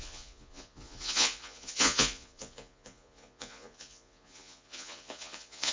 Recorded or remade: remade